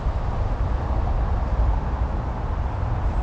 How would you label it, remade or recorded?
recorded